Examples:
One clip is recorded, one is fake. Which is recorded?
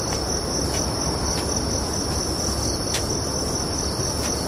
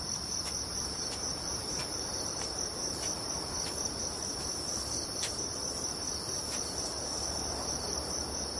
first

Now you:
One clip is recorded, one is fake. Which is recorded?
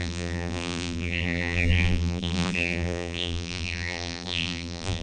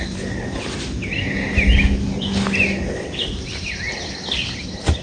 second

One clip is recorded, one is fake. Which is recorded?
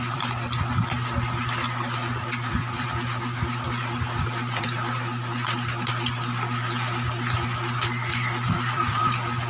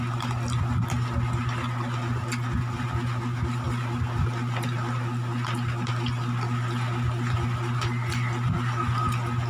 second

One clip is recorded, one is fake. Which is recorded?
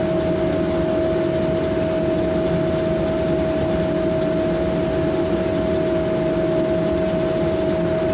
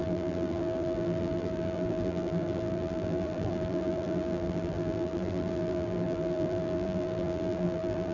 first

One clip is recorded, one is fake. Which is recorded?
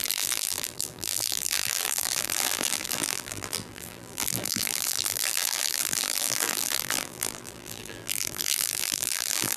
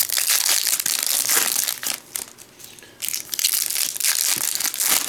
second